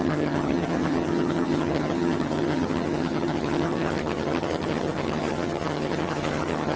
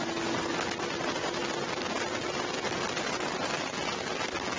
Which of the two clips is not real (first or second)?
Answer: first